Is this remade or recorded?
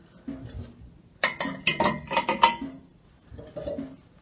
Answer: recorded